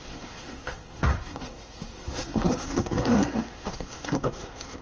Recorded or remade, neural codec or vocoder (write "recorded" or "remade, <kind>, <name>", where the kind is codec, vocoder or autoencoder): remade, codec, SNAC